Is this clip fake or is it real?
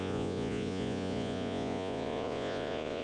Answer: fake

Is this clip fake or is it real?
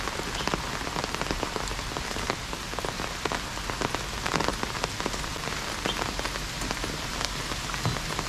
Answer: real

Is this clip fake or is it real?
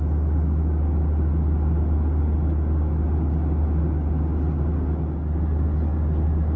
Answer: real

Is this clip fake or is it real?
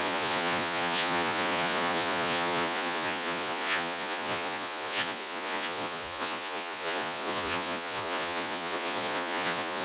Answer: fake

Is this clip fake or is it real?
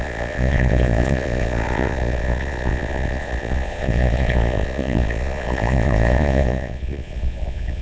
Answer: fake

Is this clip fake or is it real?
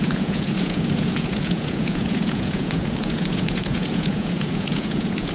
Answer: fake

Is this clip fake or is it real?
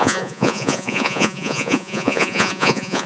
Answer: fake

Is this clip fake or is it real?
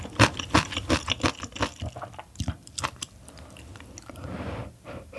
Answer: real